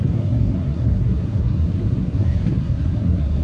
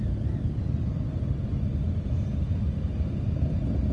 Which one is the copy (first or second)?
first